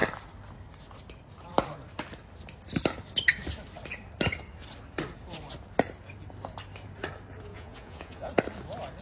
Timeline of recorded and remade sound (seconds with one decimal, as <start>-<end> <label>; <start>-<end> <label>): 0.0-7.5 recorded; 7.5-8.3 remade; 8.3-9.0 recorded